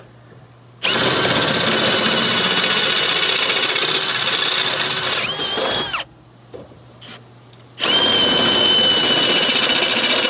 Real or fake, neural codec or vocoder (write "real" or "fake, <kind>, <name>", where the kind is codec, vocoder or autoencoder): real